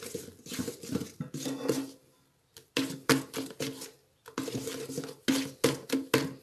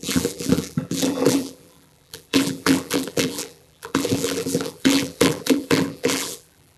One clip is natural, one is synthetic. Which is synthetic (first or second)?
second